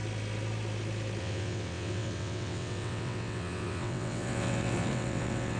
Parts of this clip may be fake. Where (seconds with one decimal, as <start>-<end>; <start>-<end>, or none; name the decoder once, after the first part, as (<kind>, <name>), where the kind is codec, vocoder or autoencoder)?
1.2-5.6 (vocoder, WaveNeXt)